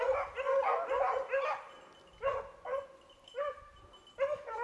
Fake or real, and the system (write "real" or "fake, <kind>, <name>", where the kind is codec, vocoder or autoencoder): real